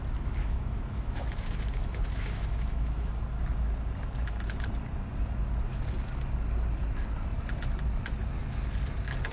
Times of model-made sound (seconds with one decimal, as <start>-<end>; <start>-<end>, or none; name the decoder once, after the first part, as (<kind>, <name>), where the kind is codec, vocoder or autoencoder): 0.4-3.2 (autoencoder, DAC-VAE)

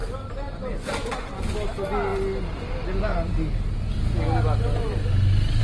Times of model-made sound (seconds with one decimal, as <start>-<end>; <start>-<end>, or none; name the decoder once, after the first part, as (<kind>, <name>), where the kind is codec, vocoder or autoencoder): none

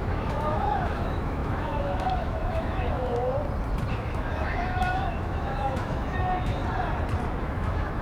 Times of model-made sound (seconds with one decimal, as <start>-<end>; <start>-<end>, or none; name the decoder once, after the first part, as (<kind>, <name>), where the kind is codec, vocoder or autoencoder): 0.0-3.3 (autoencoder, DAC-VAE); 3.9-6.6; 7.4-8.0

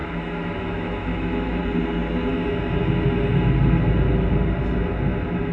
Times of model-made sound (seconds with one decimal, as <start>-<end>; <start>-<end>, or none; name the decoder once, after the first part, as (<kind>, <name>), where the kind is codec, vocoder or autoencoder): 0.0-1.6 (autoencoder, DAC-VAE)

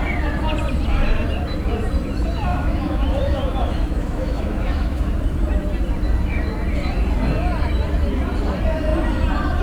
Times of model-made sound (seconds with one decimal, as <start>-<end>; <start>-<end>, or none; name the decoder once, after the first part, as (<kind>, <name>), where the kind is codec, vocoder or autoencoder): 2.5-5.0 (autoencoder, DAC-VAE)

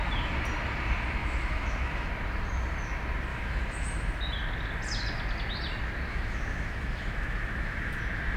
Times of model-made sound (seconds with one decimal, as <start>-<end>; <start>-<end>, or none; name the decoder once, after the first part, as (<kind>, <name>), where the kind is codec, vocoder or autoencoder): 1.2-2.1 (autoencoder, DAC-VAE); 3.3-4.2; 6.1-8.0

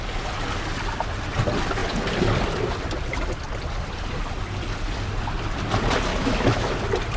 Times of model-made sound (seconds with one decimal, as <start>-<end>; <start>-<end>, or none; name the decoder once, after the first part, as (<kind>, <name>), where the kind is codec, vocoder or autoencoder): 6.1-6.8 (autoencoder, DAC-VAE)

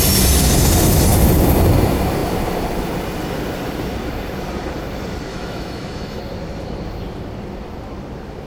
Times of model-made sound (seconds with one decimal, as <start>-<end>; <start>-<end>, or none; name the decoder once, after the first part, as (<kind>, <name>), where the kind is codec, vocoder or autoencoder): 5.3-6.2 (autoencoder, DAC-VAE)